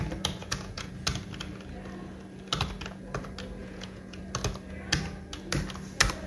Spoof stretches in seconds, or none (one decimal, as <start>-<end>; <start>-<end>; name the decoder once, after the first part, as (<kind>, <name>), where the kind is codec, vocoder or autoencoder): 0.4-0.9 (vocoder, Vocos); 3.6-4.2